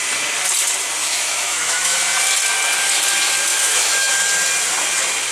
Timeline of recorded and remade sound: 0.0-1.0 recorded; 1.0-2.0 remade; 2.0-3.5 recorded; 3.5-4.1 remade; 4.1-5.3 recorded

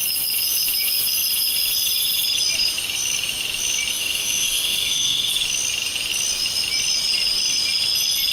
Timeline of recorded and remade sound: 0.0-3.9 recorded; 3.9-5.3 remade; 5.3-8.3 recorded

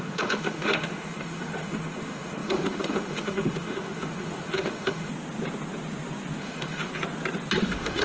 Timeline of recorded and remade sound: 0.0-5.1 remade; 5.1-6.4 recorded; 6.4-6.9 remade; 6.9-7.6 recorded; 7.6-8.0 remade

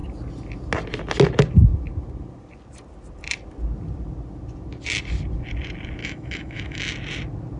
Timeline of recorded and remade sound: 0.0-6.0 recorded; 6.0-6.8 remade; 6.8-7.6 recorded

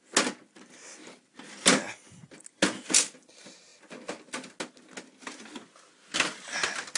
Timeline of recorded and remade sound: 0.0-7.0 recorded

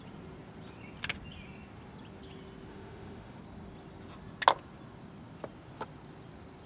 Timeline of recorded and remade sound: 0.0-2.7 recorded; 2.7-3.4 remade; 3.4-6.7 recorded